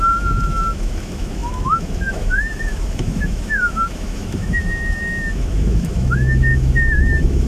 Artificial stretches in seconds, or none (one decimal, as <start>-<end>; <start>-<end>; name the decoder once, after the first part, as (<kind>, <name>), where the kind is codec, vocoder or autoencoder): 0.0-7.5 (autoencoder, DAC-VAE)